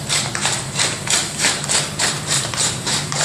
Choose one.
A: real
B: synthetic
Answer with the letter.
B